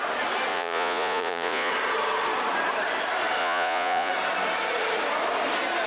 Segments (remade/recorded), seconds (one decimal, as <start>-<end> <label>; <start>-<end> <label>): 0.0-0.5 recorded; 0.5-1.7 remade; 1.7-3.4 recorded; 3.4-4.1 remade; 4.1-5.9 recorded